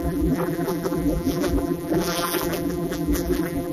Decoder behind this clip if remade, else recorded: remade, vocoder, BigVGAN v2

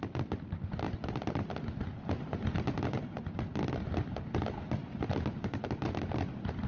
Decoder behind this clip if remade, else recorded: recorded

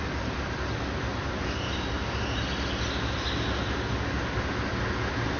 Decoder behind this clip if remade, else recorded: recorded